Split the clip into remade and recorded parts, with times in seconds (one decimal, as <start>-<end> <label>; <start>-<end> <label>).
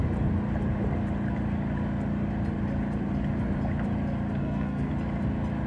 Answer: 0.0-4.4 recorded; 4.4-4.9 remade; 4.9-5.7 recorded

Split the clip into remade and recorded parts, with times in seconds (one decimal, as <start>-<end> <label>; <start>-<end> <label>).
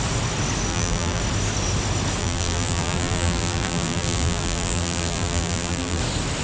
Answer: 0.0-0.7 recorded; 0.7-1.2 remade; 1.2-2.2 recorded; 2.2-6.0 remade; 6.0-6.4 recorded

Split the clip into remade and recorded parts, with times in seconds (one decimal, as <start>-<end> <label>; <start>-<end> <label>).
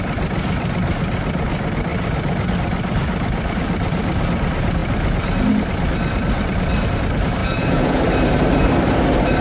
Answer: 0.0-7.4 recorded; 7.4-8.0 remade; 8.0-9.4 recorded